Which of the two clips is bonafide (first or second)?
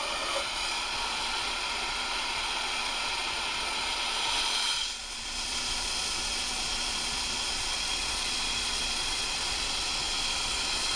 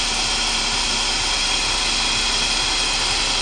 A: second